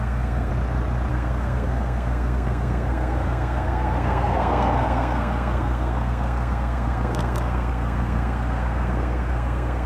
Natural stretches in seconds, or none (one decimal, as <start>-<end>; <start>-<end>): 0.5-1.1